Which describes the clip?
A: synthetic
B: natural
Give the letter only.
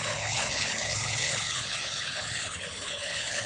A